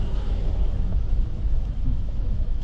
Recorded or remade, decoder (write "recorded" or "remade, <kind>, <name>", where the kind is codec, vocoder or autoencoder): remade, autoencoder, DAC-VAE